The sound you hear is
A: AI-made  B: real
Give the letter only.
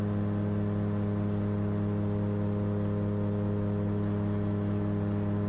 B